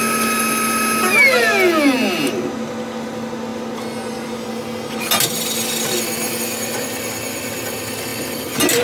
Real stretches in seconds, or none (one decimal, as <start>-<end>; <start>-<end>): 0.0-8.8